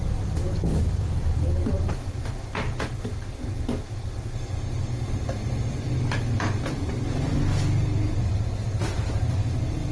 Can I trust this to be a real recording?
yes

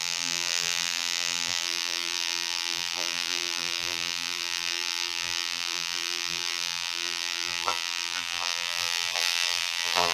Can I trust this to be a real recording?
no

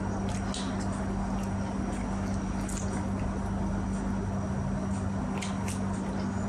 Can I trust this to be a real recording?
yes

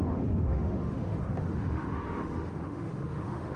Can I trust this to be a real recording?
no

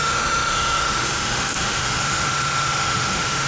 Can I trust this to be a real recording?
no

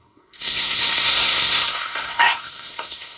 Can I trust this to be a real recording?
no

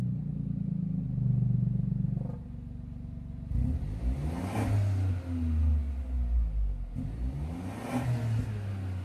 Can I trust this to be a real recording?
yes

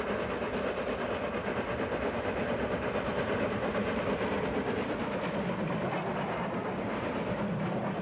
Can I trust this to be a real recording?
yes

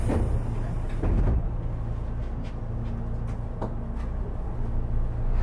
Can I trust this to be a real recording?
yes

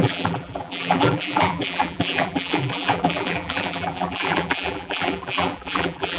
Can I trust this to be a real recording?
no